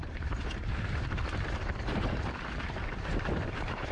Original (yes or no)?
no